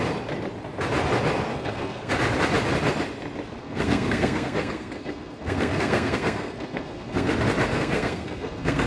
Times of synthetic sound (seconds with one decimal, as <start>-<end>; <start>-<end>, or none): 1.5-2.1; 3.6-7.3; 7.7-8.9